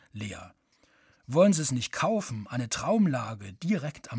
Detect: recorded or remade recorded